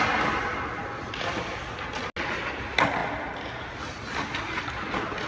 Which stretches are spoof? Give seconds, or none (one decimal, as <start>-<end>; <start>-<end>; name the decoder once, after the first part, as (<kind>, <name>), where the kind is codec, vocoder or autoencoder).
none